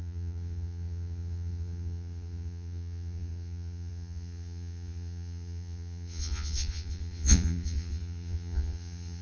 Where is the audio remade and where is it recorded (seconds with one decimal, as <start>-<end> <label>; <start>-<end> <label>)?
0.0-9.2 remade